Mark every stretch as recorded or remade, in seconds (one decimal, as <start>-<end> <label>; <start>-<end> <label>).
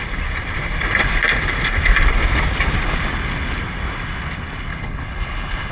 0.0-4.7 recorded; 4.7-5.7 remade